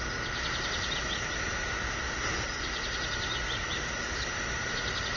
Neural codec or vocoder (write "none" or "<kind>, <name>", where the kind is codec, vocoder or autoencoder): none